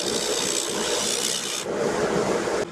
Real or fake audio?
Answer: real